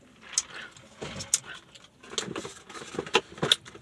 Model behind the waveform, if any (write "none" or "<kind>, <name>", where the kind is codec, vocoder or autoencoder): none